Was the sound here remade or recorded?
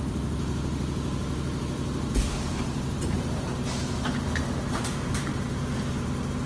remade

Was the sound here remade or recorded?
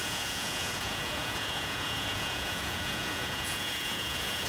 remade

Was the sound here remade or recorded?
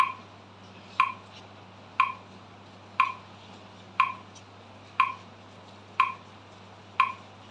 recorded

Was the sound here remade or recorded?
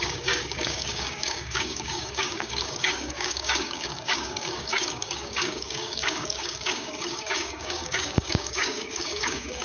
remade